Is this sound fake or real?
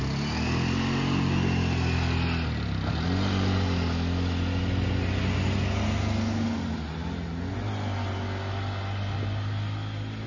real